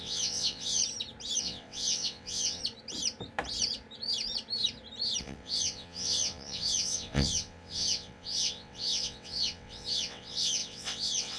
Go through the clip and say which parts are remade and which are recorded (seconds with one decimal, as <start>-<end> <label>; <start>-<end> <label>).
0.0-0.8 remade; 0.8-1.4 recorded; 1.4-2.6 remade; 2.6-5.2 recorded; 5.2-11.4 remade